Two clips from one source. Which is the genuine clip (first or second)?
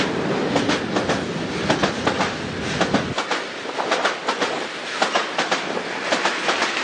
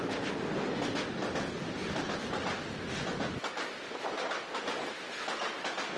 second